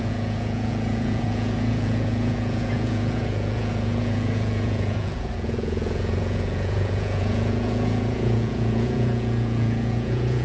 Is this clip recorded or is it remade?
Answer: remade